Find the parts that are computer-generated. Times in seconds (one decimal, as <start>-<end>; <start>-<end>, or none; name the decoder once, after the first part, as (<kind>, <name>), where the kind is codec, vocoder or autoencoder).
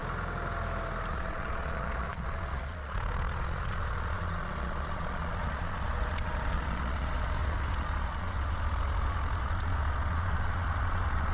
1.1-11.3 (vocoder, Vocos)